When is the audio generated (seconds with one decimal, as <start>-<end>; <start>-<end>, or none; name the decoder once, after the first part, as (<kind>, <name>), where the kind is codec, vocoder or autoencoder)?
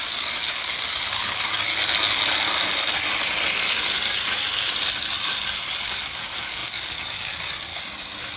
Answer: 0.0-1.7 (codec, DAC); 5.8-7.7